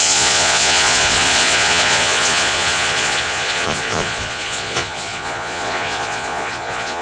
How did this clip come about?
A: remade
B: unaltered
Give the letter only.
A